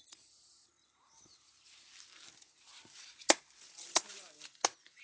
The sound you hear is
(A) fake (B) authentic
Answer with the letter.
B